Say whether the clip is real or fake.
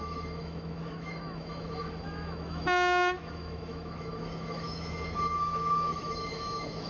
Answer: fake